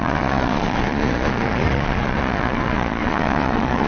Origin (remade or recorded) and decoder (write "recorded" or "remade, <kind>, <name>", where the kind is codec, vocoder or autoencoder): remade, vocoder, Vocos